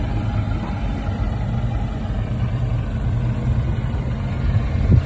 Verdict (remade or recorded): recorded